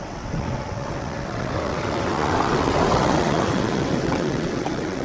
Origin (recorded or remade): remade